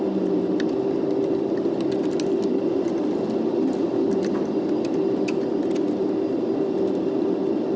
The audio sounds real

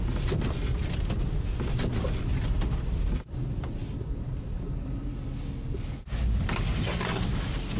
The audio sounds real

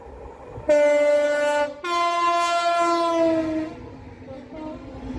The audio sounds real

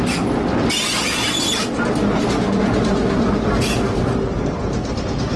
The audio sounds real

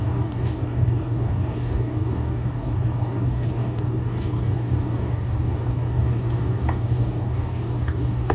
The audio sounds fake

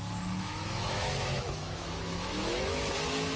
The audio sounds fake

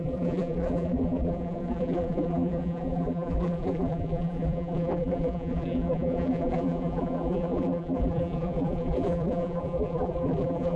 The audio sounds fake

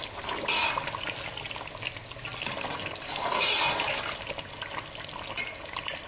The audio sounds real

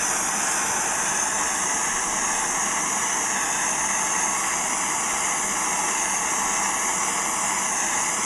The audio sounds real